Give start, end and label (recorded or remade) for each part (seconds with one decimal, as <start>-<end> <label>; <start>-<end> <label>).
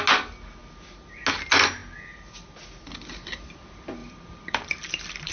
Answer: 0.0-4.0 recorded; 4.0-5.3 remade